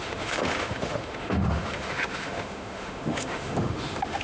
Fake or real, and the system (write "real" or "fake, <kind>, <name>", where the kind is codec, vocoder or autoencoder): fake, autoencoder, DAC-VAE